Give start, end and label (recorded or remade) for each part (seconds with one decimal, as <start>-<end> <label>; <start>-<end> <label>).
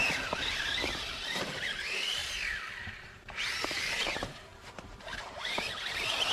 0.0-2.2 remade; 2.2-3.0 recorded; 3.0-6.3 remade